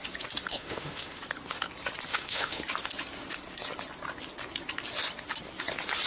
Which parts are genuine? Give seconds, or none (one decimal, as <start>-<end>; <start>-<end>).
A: 0.0-0.5; 1.2-2.1; 2.6-6.1

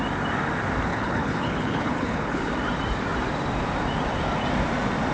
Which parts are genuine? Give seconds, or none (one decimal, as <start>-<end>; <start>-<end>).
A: 0.0-0.9; 2.5-5.1

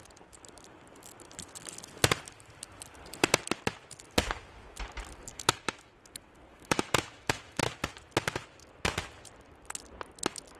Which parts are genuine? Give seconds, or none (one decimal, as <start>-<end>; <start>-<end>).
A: 0.0-5.3; 5.9-6.5; 7.6-10.6